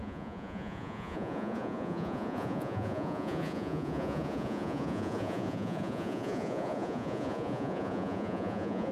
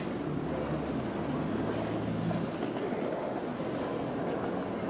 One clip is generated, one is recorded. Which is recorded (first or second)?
second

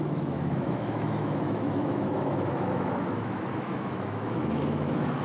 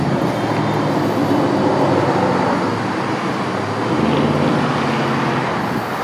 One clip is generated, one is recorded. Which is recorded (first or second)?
second